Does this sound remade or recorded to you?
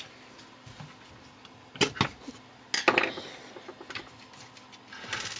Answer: recorded